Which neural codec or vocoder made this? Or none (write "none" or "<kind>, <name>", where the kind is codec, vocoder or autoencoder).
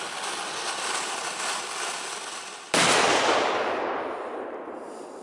none